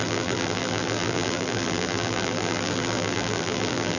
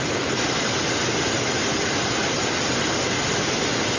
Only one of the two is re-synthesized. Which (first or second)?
first